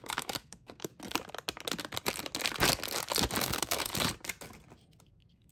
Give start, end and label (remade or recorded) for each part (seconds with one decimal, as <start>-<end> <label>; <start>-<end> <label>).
0.0-0.9 remade; 0.9-3.4 recorded; 3.4-3.9 remade; 3.9-5.0 recorded; 5.0-5.5 remade